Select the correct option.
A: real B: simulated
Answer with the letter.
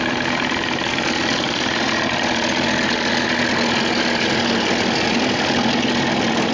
A